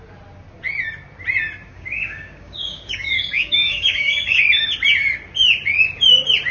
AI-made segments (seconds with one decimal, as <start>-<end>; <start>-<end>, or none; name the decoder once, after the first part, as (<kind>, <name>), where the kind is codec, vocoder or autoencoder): 1.7-4.4 (codec, DAC)